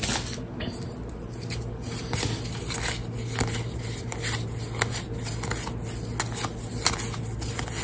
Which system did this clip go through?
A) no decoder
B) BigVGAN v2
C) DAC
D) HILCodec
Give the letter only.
A